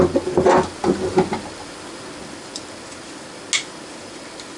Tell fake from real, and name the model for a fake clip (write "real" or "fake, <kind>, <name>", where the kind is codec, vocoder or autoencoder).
real